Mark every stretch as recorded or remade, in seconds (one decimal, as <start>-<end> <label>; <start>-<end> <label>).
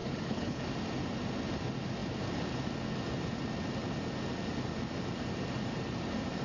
0.0-0.6 remade; 0.6-6.4 recorded